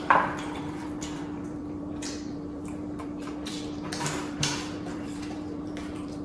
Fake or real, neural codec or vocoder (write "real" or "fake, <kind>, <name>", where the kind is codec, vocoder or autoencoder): fake, vocoder, BigVGAN v2